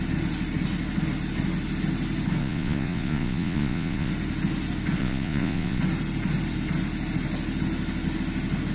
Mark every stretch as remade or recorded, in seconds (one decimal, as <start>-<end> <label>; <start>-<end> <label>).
0.0-2.4 recorded; 2.4-4.1 remade; 4.1-5.0 recorded; 5.0-5.8 remade; 5.8-8.7 recorded